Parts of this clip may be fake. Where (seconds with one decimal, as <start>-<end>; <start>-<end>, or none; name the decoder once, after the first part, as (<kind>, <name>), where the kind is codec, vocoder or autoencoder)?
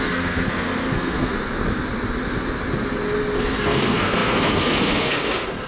0.0-1.3 (codec, SNAC); 3.4-5.7